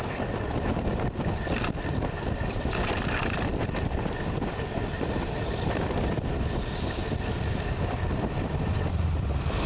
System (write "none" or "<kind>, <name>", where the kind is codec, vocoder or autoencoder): none